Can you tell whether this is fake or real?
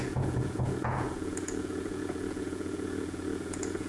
fake